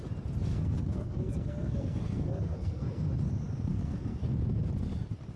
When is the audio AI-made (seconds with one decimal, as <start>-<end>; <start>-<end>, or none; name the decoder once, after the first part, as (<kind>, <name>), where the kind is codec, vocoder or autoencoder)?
0.5-3.1 (codec, SNAC); 3.7-4.2

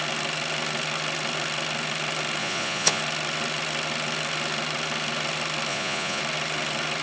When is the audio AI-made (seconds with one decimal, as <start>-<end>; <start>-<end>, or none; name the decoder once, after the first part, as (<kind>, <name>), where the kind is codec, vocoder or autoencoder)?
2.4-3.0 (vocoder, Vocos); 5.7-6.2

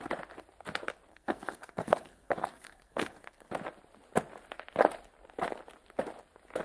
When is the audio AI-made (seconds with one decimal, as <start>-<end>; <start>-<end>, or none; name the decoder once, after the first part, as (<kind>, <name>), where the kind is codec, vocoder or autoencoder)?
1.1-3.5 (codec, SNAC)

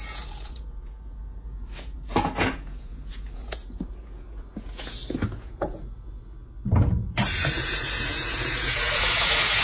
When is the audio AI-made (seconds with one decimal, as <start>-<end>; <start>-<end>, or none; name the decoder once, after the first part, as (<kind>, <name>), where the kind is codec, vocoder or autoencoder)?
0.0-6.4 (vocoder, Vocos); 7.4-9.6

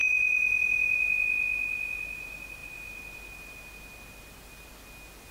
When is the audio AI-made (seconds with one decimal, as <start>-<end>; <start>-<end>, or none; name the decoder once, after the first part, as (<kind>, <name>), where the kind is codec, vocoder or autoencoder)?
none

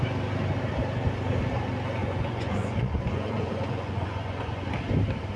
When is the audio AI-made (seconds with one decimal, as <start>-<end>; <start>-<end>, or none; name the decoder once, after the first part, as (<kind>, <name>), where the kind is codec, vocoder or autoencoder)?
2.0-4.7 (vocoder, Vocos)